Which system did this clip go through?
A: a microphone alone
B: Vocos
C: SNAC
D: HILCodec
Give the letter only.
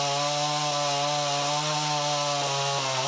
A